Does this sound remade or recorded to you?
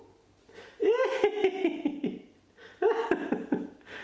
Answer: recorded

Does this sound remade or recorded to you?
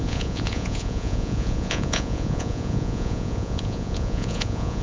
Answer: remade